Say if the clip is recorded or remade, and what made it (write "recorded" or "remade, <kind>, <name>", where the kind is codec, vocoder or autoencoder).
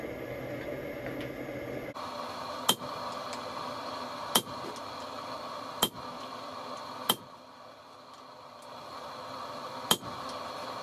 recorded